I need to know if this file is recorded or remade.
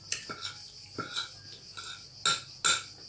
recorded